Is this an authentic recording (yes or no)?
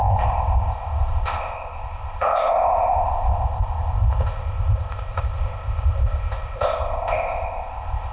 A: no